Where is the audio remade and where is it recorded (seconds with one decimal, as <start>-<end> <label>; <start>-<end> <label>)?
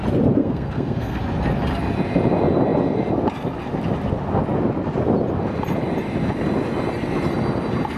0.0-0.4 recorded; 0.4-1.2 remade; 1.2-8.0 recorded